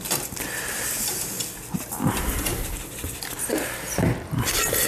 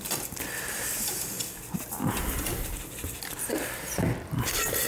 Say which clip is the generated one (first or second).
second